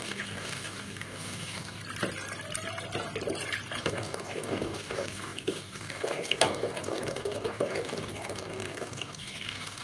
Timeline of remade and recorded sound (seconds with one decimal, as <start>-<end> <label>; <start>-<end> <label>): 0.0-1.8 remade; 1.8-3.8 recorded; 3.8-9.8 remade